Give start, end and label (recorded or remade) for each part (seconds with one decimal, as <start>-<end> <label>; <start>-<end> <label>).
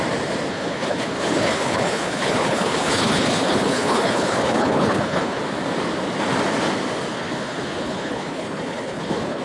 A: 0.0-0.5 recorded; 0.5-5.4 remade; 5.4-7.1 recorded; 7.1-9.4 remade